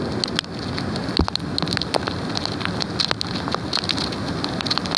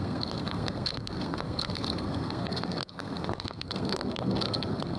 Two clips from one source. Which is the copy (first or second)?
second